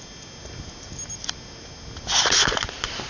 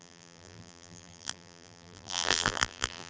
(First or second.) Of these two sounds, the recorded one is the first